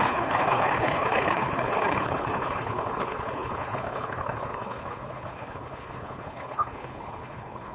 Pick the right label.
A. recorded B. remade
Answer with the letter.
B